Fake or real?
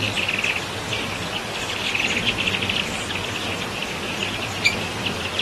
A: real